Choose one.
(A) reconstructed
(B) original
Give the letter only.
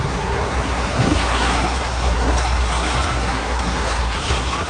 A